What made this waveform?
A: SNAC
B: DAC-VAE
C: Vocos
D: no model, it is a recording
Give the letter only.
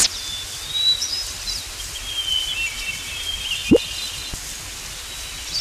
D